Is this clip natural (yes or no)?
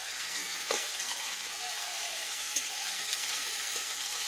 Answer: no